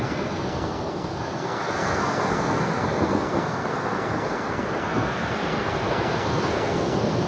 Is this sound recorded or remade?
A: remade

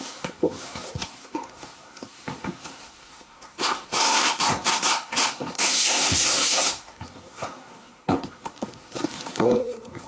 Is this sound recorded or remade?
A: remade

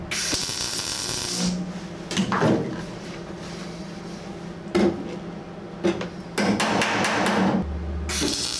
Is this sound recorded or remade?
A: recorded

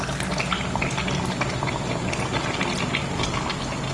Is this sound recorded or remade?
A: recorded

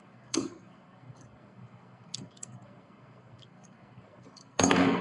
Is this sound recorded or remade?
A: remade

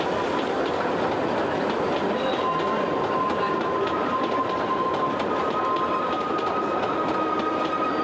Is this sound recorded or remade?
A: recorded